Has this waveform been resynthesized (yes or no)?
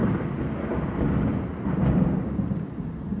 no